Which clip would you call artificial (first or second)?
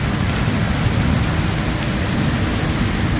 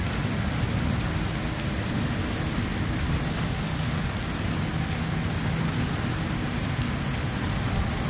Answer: first